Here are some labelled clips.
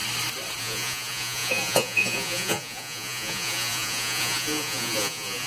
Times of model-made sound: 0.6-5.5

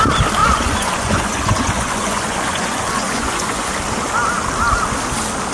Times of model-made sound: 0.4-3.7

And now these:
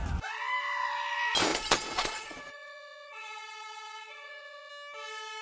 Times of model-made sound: 1.5-4.7

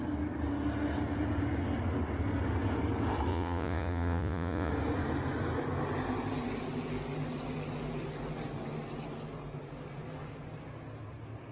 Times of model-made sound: 3.3-4.7

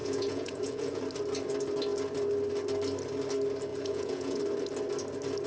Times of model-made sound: 0.0-1.0; 3.7-4.4

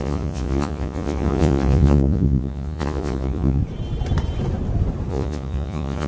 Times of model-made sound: 0.0-3.6; 5.1-6.1